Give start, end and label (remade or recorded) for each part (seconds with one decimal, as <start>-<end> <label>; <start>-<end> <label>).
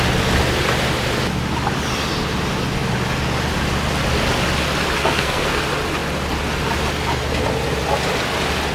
0.0-5.0 recorded; 5.0-5.6 remade; 5.6-8.7 recorded